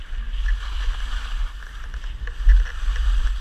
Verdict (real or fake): real